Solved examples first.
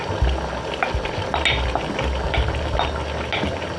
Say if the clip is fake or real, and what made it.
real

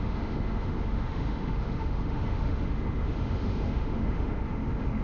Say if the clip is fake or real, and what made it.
fake, autoencoder, DAC-VAE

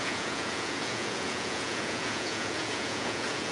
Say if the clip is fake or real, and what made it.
fake, vocoder, Vocos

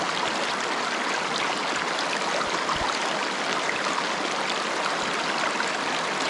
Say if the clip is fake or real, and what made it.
real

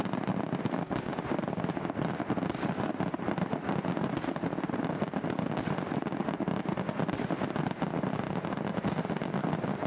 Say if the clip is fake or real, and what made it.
real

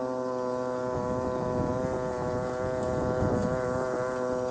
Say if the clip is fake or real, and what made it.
real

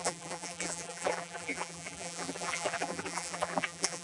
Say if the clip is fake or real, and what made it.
fake, vocoder, BigVGAN v2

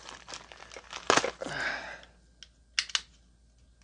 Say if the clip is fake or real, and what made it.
real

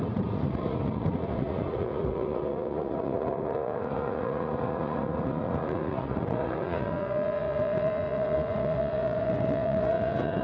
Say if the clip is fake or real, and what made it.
fake, vocoder, Vocos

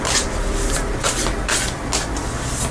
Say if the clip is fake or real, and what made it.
real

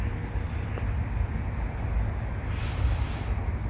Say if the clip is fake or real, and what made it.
real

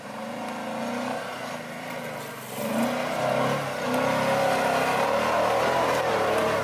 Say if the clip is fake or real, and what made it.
real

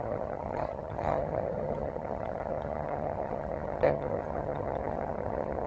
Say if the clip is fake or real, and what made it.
fake, vocoder, HiFi-GAN